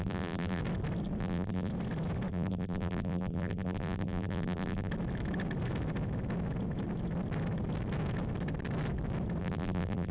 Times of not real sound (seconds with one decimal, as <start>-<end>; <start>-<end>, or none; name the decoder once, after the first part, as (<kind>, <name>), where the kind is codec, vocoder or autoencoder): 0.0-0.6 (vocoder, BigVGAN v2); 1.2-1.7; 2.3-4.9; 9.4-10.1